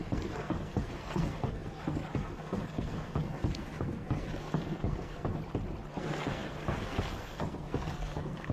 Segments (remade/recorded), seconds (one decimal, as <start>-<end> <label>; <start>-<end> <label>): 0.0-5.4 remade; 5.4-5.9 recorded; 5.9-8.5 remade